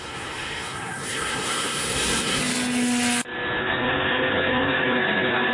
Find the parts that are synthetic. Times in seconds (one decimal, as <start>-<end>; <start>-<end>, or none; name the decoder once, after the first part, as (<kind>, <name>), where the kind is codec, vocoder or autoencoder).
0.0-2.4 (codec, SNAC); 3.6-5.5